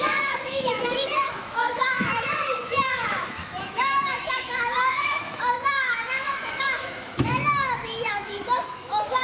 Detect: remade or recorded remade